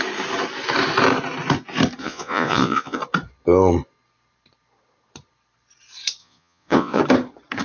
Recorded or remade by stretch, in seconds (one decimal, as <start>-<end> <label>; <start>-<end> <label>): 0.0-2.0 recorded; 2.0-3.0 remade; 3.0-6.2 recorded; 6.2-7.0 remade; 7.0-7.6 recorded